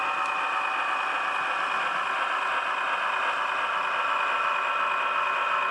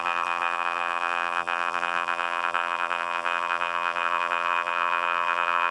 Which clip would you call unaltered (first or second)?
first